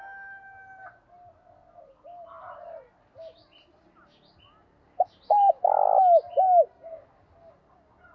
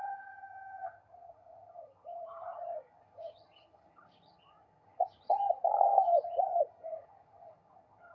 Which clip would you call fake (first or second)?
second